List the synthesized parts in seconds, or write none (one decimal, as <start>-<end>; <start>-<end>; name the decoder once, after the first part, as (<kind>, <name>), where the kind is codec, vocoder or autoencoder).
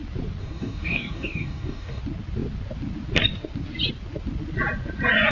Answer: 0.4-2.0 (codec, DAC)